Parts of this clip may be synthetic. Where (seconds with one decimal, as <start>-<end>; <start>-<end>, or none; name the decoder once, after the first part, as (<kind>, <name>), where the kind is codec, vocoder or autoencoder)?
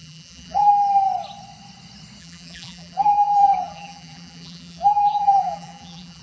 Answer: 0.0-0.7 (vocoder, BigVGAN v2); 2.2-6.2